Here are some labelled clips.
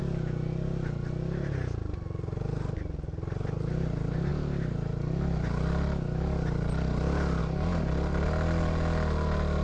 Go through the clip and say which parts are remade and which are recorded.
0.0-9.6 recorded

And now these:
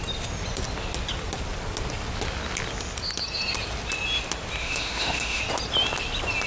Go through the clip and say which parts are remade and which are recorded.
0.0-4.6 recorded; 4.6-5.4 remade; 5.4-6.5 recorded